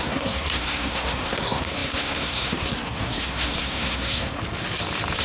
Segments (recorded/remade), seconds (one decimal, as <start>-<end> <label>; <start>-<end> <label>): 0.0-4.4 remade; 4.4-5.2 recorded